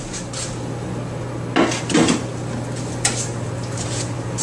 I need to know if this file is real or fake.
real